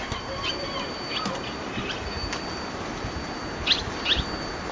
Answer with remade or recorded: recorded